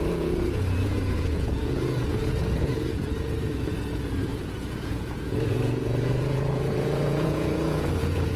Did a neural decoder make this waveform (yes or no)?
yes